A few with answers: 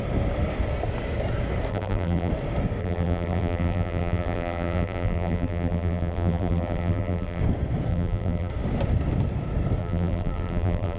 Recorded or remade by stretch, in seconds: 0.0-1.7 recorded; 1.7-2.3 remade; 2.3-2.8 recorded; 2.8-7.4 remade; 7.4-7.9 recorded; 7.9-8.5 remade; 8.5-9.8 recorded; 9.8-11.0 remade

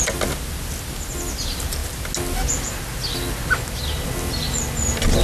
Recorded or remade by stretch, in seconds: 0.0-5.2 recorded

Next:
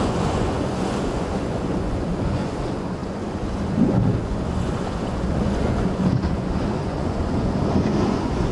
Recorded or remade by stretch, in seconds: 0.0-8.5 remade